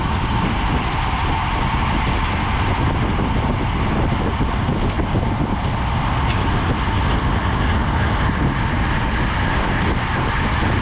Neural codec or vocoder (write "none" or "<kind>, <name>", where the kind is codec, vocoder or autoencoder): none